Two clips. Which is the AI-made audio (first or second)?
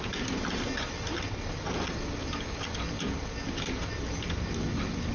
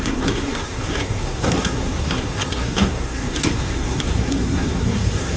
second